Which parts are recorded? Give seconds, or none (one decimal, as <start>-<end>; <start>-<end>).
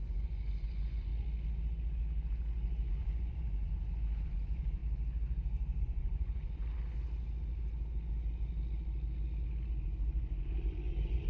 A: 1.1-2.9; 4.8-5.8; 6.6-9.8